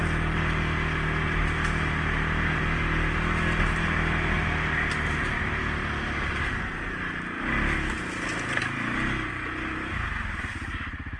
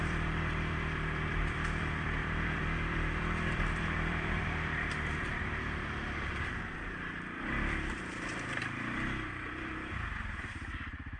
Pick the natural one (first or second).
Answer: first